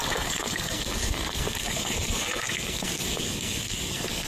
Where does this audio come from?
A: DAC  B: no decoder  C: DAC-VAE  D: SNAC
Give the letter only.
D